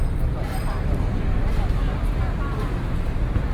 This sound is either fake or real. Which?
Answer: real